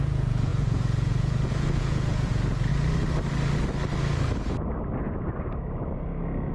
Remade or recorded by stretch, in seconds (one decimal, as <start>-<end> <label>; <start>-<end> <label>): 0.0-2.7 remade; 2.7-6.5 recorded